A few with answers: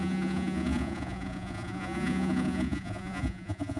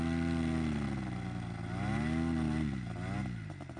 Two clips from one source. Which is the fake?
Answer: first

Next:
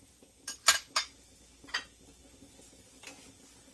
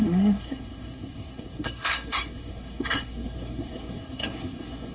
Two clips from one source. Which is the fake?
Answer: second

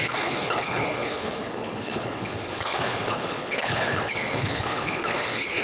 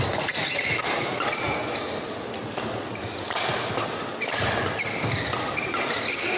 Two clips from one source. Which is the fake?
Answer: first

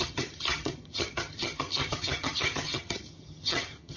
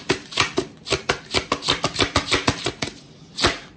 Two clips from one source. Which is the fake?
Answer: first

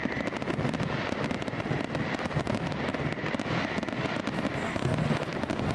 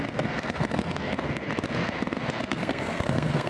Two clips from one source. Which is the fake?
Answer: second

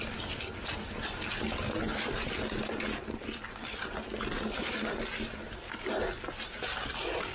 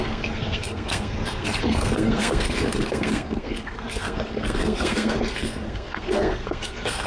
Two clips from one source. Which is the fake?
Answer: second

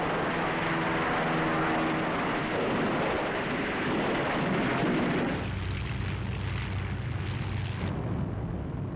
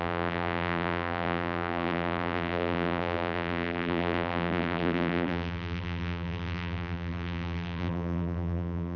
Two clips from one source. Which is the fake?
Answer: second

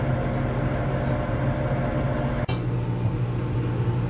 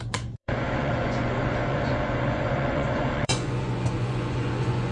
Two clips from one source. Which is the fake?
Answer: second